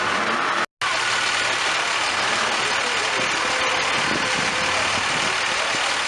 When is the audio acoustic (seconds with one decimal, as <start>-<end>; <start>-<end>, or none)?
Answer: 0.0-6.1